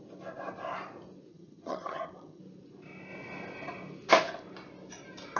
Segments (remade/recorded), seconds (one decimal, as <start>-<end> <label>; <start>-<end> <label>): 0.0-1.3 recorded; 1.3-2.4 remade; 2.4-5.4 recorded